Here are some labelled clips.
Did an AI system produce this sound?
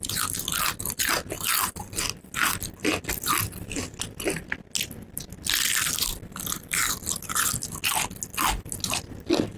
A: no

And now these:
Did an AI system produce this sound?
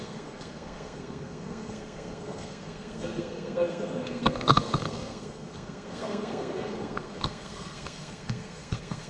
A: yes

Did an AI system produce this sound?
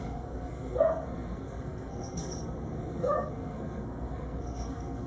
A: yes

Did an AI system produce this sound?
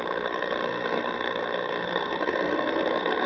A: yes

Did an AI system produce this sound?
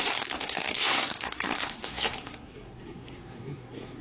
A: yes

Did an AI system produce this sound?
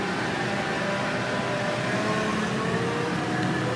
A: no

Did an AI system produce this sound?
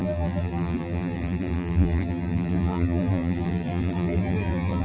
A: yes